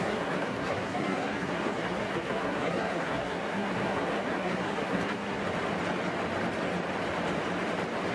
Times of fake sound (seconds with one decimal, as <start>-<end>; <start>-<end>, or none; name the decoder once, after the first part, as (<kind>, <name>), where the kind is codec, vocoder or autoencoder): 0.0-5.4 (codec, SNAC)